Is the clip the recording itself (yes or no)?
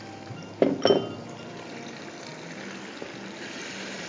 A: yes